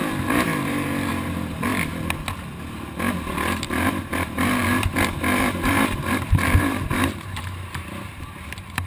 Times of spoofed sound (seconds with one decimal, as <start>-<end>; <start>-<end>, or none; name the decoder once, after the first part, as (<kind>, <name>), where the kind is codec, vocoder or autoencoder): 0.0-1.7 (vocoder, BigVGAN v2); 3.1-8.9